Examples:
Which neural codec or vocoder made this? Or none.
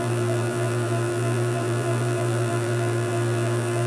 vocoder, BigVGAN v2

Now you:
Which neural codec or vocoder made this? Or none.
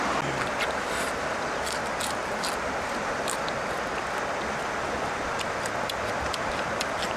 none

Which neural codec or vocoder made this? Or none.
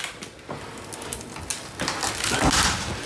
none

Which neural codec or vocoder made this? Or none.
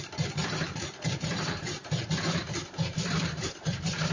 vocoder, BigVGAN v2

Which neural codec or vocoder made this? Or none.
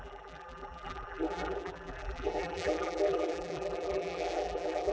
vocoder, BigVGAN v2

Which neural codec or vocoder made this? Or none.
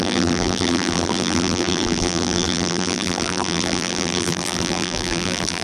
vocoder, BigVGAN v2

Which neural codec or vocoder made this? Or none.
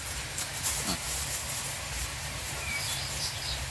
vocoder, BigVGAN v2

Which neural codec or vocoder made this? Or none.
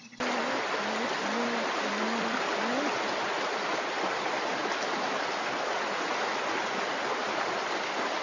none